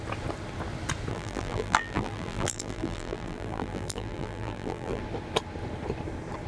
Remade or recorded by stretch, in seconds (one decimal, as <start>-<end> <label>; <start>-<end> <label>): 0.0-1.1 recorded; 1.1-5.0 remade; 5.0-6.5 recorded